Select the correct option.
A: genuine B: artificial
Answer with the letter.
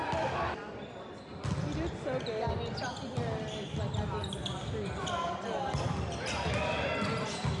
A